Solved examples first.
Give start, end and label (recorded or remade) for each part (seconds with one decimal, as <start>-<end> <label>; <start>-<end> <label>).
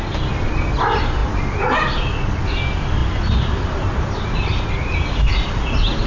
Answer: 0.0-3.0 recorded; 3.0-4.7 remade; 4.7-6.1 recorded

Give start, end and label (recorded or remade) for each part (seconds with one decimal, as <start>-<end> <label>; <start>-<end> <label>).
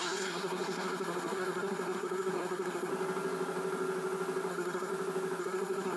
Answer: 0.0-2.9 remade; 2.9-4.5 recorded; 4.5-4.9 remade; 4.9-5.4 recorded; 5.4-6.0 remade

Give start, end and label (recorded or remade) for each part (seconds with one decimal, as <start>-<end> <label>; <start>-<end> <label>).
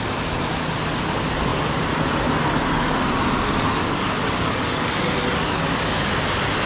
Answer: 0.0-3.8 recorded; 3.8-6.1 remade; 6.1-6.7 recorded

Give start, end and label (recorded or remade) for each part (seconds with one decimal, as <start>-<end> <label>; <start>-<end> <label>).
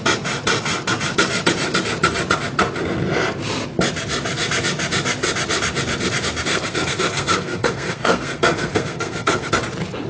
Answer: 0.0-6.5 recorded; 6.5-9.5 remade; 9.5-10.1 recorded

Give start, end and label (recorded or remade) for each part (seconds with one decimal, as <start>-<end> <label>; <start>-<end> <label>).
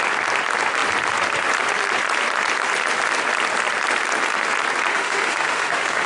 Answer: 0.0-4.9 recorded; 4.9-6.1 remade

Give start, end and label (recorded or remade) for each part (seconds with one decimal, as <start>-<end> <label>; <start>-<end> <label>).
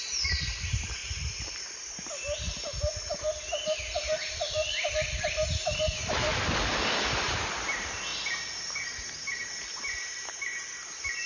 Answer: 0.0-1.0 remade; 1.0-4.9 recorded; 4.9-6.3 remade; 6.3-7.1 recorded; 7.1-8.1 remade; 8.1-8.8 recorded; 8.8-11.3 remade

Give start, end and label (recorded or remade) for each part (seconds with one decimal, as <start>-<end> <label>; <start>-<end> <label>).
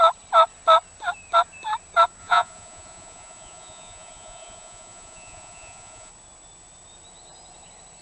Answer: 0.0-2.2 recorded; 2.2-6.1 remade; 6.1-8.0 recorded